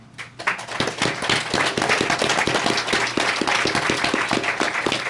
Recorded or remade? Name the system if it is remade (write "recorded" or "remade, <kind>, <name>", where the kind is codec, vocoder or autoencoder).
recorded